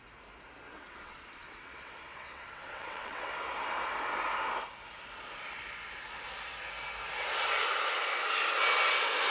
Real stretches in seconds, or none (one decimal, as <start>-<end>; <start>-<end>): 0.0-0.7; 3.3-9.3